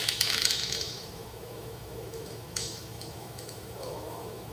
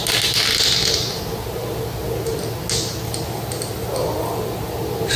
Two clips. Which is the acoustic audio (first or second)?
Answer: second